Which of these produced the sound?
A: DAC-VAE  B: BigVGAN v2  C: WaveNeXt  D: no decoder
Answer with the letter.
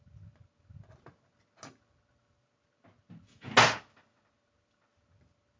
D